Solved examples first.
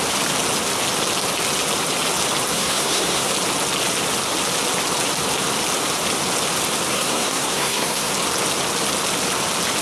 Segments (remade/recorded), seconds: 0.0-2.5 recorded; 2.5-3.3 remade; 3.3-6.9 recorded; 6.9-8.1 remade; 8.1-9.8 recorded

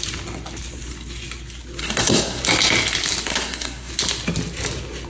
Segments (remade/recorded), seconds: 0.0-1.8 recorded; 1.8-2.4 remade; 2.4-3.3 recorded; 3.3-3.9 remade; 3.9-5.1 recorded